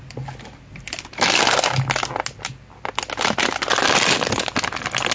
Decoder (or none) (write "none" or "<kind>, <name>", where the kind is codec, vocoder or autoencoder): none